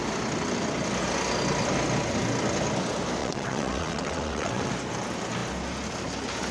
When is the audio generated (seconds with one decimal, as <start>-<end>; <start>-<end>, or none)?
3.2-4.7